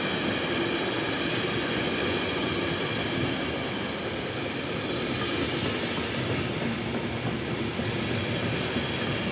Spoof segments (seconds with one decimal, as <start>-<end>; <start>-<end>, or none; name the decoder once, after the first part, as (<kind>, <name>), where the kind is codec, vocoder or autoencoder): 1.6-2.5 (vocoder, Vocos)